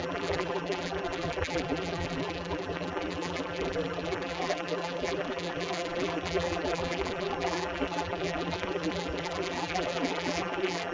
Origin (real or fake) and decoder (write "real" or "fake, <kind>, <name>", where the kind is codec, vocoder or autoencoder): fake, vocoder, BigVGAN v2